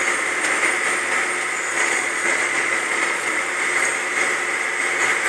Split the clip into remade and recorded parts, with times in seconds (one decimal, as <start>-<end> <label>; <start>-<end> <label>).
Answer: 0.0-1.7 recorded; 1.7-3.3 remade; 3.3-5.3 recorded